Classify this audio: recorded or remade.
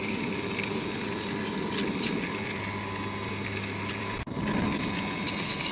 recorded